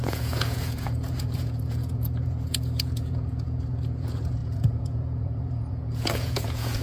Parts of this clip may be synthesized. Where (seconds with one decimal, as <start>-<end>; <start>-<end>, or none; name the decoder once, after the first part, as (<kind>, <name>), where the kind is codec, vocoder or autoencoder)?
0.0-6.8 (vocoder, Vocos)